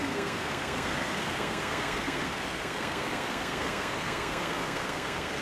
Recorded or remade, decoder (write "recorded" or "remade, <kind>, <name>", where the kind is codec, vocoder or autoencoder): remade, codec, SNAC